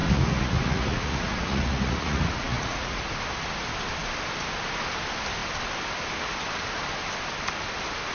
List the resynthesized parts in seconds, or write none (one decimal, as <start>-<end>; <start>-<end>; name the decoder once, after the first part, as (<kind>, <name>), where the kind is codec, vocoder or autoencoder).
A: 0.0-3.0 (vocoder, Vocos)